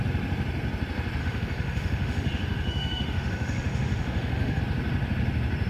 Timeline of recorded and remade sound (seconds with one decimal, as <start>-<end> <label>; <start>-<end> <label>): 0.0-1.2 recorded; 1.2-4.6 remade; 4.6-5.7 recorded